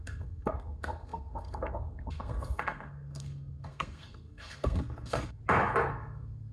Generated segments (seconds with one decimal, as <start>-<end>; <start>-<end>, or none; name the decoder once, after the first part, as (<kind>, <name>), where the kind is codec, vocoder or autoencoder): 0.0-5.4 (codec, SNAC); 5.9-6.5